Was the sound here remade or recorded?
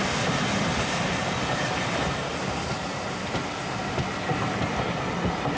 recorded